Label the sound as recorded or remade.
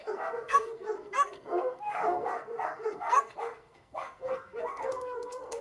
remade